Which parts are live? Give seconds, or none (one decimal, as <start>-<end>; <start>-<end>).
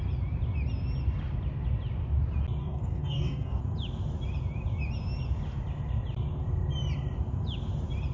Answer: 0.0-2.6; 3.6-8.1